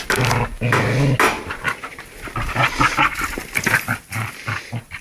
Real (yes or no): yes